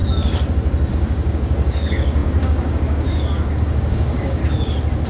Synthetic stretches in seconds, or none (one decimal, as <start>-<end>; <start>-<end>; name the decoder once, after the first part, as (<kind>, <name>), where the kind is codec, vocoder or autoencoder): 0.9-4.4 (codec, DAC)